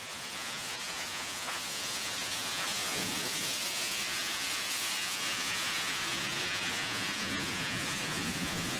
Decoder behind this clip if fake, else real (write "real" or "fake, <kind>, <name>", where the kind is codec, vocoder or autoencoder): fake, vocoder, Vocos